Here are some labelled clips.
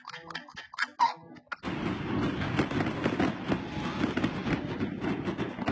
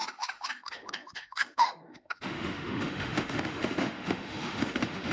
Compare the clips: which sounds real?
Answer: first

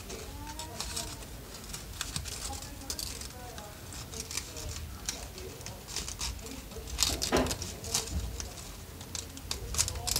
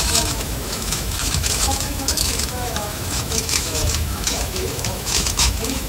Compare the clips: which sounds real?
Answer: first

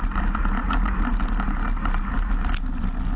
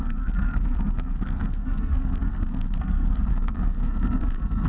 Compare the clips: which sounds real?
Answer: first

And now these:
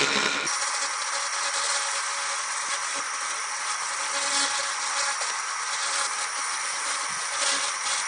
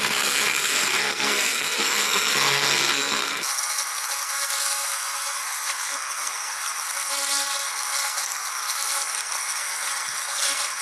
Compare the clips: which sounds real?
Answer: first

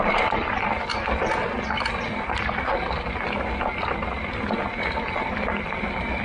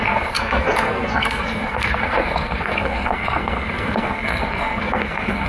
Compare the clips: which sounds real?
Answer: first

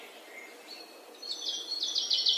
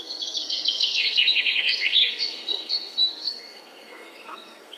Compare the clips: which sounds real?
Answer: first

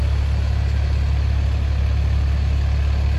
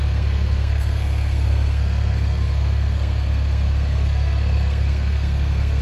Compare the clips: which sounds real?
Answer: first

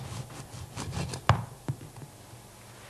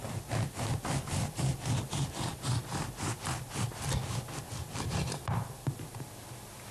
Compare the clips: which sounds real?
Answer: first